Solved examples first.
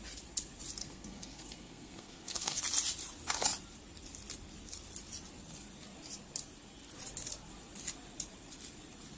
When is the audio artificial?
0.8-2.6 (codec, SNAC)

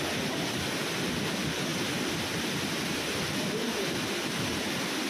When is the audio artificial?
none

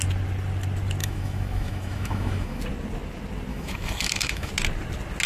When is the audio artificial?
1.0-2.6 (autoencoder, DAC-VAE); 3.5-4.5

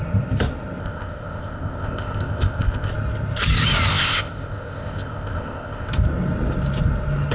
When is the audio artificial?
0.8-2.9 (codec, ZipCodec); 3.9-5.9

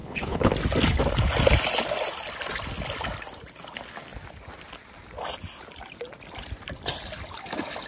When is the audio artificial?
0.0-0.5 (codec, HILCodec)

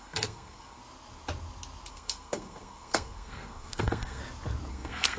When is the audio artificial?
0.0-0.8 (codec, SNAC); 1.9-4.2; 4.7-5.2

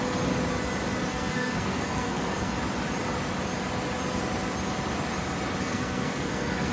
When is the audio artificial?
1.1-2.5 (codec, SNAC); 5.6-6.7